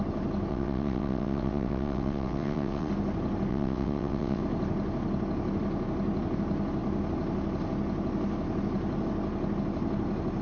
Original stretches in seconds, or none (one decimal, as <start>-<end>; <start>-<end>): 0.0-0.5; 2.9-3.5; 4.4-10.4

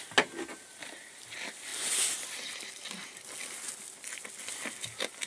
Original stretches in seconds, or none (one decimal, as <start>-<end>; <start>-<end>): 0.0-5.3

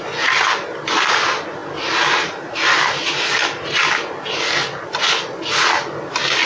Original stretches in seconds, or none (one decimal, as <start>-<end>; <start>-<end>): 0.0-6.5

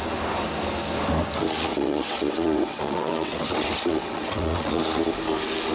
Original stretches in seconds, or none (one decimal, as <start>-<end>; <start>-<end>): 0.0-1.7; 4.8-5.7